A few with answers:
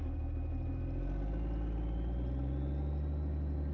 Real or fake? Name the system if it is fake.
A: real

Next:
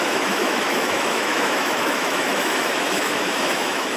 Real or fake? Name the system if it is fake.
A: fake, autoencoder, DAC-VAE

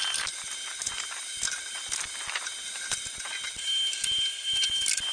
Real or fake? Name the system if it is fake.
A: real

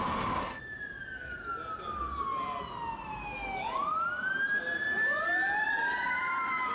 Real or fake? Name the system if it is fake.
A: real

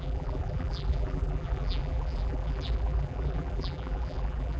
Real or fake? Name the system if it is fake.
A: fake, vocoder, BigVGAN v2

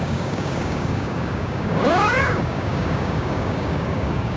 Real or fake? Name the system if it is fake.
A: fake, codec, DAC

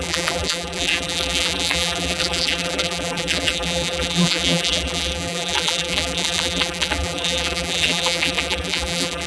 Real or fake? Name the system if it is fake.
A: fake, vocoder, BigVGAN v2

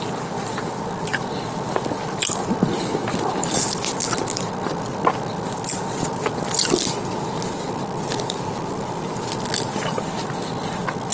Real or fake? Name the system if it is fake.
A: real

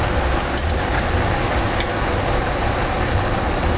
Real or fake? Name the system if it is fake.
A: real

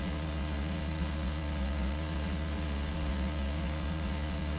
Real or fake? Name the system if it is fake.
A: fake, vocoder, Vocos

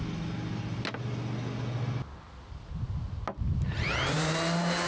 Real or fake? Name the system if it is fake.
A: real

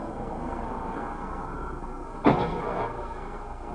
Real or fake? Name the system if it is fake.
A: fake, codec, SNAC